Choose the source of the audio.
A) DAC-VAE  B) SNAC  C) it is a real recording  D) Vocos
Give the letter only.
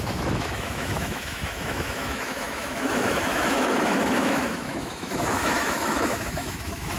A